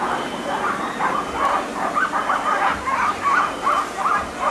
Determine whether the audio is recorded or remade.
remade